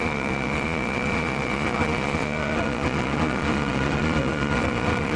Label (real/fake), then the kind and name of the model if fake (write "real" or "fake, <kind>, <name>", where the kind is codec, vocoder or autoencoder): fake, vocoder, Vocos